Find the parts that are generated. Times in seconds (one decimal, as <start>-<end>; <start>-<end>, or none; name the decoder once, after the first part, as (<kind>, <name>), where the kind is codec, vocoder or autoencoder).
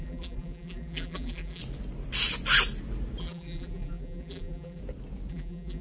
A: 0.0-1.6 (vocoder, BigVGAN v2); 3.2-4.8; 5.3-5.8